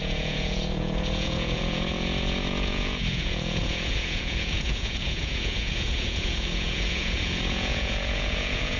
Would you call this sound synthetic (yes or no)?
yes